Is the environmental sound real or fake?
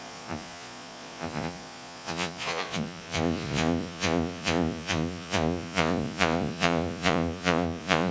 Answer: fake